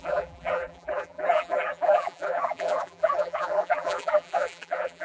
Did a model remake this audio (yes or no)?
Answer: yes